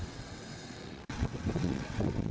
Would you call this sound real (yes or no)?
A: no